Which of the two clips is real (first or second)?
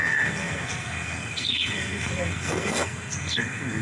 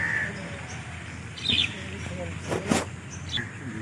second